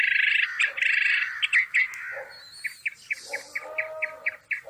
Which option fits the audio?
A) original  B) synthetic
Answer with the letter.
A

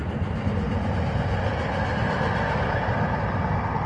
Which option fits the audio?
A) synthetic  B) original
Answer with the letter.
B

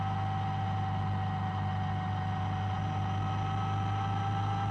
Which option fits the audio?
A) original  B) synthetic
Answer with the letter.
A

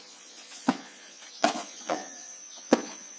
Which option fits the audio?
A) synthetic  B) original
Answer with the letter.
A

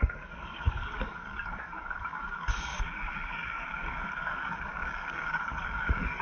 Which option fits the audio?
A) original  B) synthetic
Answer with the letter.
B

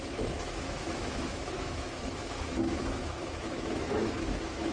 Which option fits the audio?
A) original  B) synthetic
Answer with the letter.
B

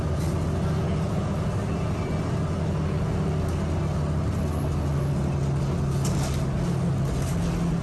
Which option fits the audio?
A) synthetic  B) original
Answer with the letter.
B